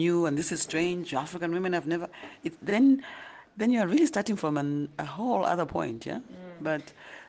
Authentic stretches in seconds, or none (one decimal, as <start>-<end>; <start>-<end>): 0.0-7.3